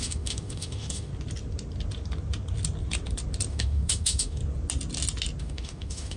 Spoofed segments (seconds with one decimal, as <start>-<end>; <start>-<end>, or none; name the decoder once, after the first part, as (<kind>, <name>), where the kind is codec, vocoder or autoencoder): 0.0-1.1 (autoencoder, DAC-VAE); 3.5-4.4; 5.4-6.2